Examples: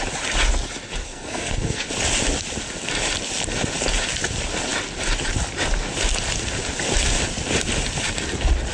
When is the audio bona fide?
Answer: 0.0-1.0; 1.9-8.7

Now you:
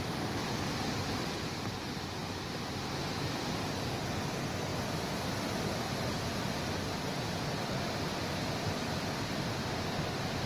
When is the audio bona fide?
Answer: 0.0-10.5

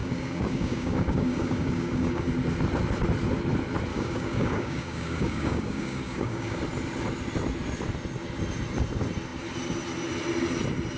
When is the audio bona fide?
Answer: 2.3-3.9; 6.6-11.0

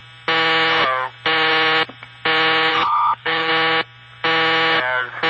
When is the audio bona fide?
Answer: 0.0-2.7; 3.5-5.3

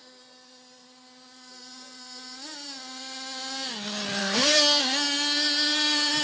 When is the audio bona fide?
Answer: 0.0-4.2; 4.8-6.2

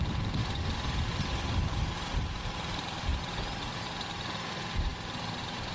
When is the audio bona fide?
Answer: 0.4-1.1

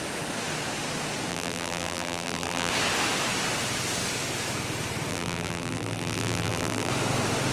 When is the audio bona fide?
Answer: 0.0-1.3; 2.7-5.1; 6.9-7.5